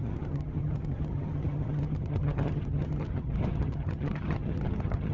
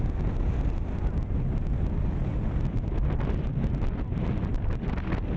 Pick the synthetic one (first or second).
first